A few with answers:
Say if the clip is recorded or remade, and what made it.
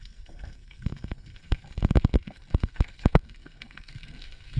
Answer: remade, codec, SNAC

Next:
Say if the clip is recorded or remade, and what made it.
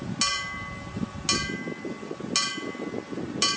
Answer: recorded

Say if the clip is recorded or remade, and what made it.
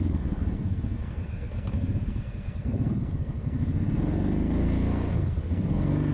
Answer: remade, codec, SNAC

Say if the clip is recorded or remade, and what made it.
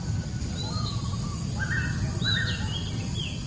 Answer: recorded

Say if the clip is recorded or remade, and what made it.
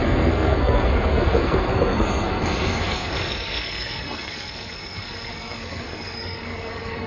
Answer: remade, codec, SNAC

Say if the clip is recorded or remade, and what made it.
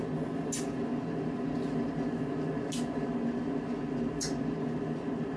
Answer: recorded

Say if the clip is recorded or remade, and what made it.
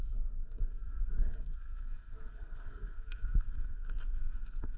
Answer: remade, codec, SNAC